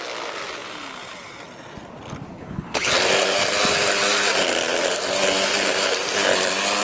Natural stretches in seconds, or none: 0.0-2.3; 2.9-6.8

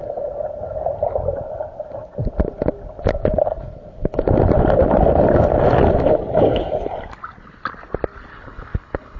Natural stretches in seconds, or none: 0.0-8.3

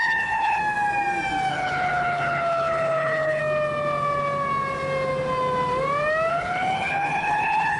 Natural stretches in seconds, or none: 0.6-1.5; 3.4-6.3

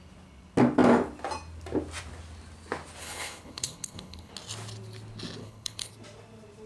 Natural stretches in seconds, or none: 0.0-3.0; 4.3-5.4; 5.9-6.7

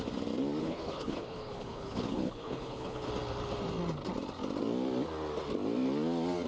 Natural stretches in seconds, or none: 0.0-0.6; 3.1-6.5

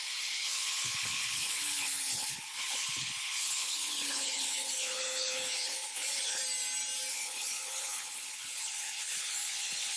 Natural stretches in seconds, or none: 6.4-7.1